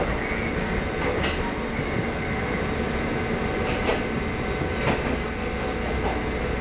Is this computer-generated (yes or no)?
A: no